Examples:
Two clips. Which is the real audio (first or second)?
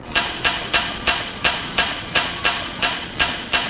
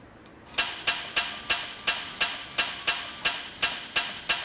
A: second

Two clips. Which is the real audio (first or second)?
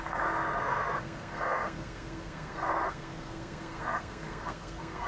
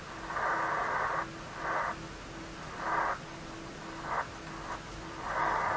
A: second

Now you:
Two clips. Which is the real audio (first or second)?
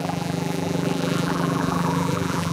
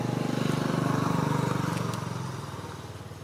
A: second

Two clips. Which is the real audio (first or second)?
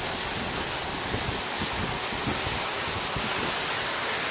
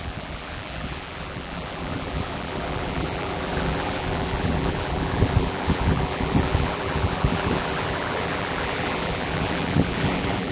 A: first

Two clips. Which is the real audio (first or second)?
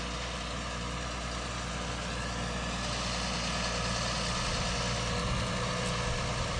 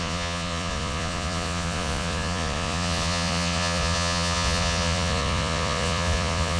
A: first